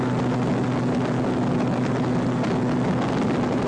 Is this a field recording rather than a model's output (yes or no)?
yes